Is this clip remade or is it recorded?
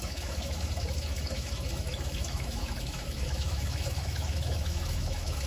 remade